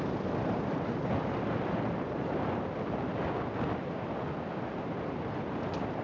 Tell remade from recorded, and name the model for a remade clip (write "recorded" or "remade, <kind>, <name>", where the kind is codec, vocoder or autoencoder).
recorded